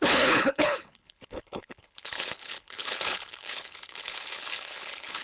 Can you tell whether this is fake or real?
fake